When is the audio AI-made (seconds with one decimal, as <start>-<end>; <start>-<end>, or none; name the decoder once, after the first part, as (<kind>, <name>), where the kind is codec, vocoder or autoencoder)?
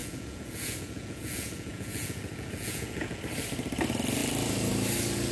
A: 0.0-3.2 (vocoder, Vocos)